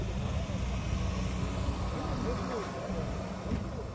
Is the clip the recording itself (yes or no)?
yes